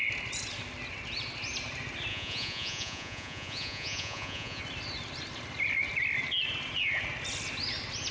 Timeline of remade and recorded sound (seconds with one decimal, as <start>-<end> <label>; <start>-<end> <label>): 0.0-2.1 recorded; 2.1-4.6 remade; 4.6-8.1 recorded